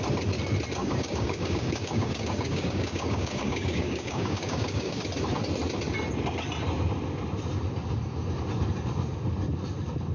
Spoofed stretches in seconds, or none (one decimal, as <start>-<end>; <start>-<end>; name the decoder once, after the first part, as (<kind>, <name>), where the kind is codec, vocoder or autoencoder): 0.8-5.0 (codec, DAC)